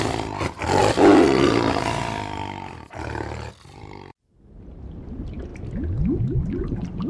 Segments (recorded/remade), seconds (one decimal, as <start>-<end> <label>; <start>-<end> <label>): 0.0-7.1 recorded